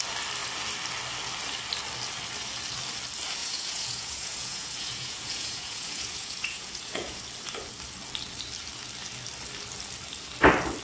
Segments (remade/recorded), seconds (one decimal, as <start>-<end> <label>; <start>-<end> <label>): 0.0-3.4 recorded; 3.4-7.2 remade; 7.2-10.8 recorded